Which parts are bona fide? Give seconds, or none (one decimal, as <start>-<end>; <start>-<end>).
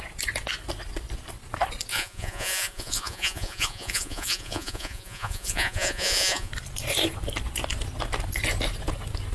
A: 0.0-1.9; 6.5-9.3